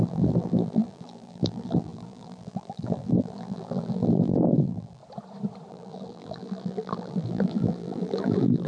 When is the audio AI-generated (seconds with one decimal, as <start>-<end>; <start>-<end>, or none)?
0.0-5.0; 5.7-8.7

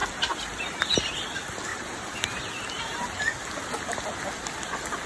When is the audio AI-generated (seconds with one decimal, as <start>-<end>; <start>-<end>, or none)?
1.7-2.5

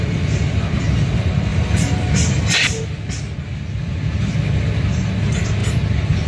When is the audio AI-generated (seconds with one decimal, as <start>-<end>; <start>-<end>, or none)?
none

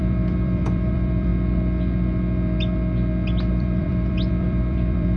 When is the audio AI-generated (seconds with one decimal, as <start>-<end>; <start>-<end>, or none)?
0.0-1.3; 3.5-5.2

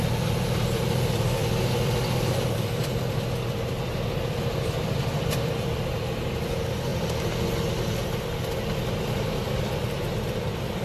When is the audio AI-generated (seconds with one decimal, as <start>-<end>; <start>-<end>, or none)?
0.0-6.9

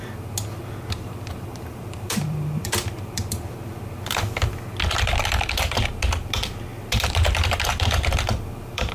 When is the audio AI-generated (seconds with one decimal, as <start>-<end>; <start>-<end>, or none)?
1.5-4.3; 6.7-8.9